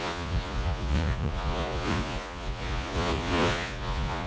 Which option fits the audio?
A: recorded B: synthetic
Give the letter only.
B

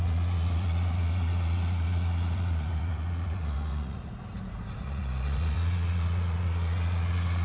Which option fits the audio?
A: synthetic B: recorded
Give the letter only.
A